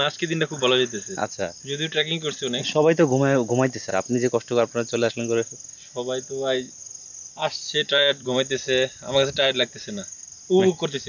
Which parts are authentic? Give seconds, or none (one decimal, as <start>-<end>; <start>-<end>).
0.0-3.9; 5.1-7.6; 10.0-11.1